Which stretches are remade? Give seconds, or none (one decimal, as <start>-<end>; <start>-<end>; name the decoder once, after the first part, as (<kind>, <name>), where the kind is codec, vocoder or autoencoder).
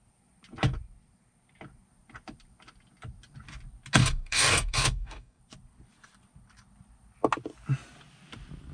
4.0-5.4 (codec, DAC)